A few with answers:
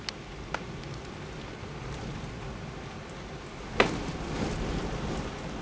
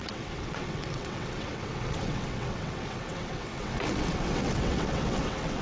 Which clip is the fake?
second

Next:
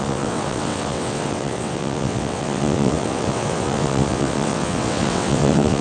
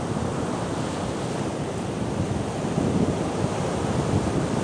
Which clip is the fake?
first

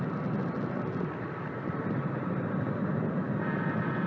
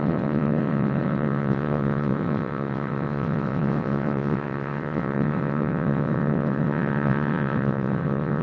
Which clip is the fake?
second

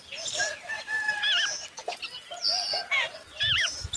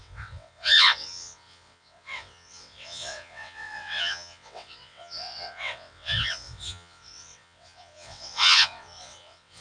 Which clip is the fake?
second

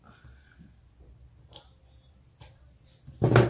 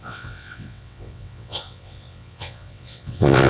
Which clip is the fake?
second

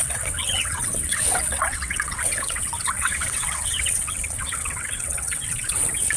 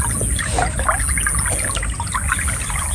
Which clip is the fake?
first